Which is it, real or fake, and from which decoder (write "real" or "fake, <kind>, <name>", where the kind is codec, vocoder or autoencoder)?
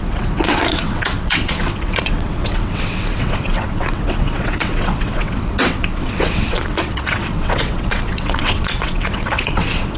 fake, vocoder, WaveNeXt